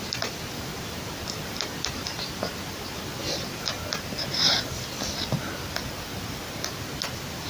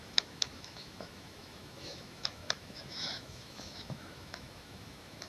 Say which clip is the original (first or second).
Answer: first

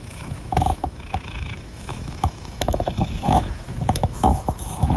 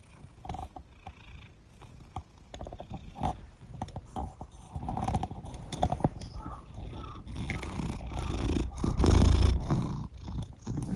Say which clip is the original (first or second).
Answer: second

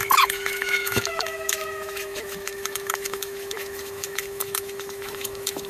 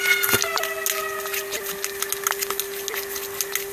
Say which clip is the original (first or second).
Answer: second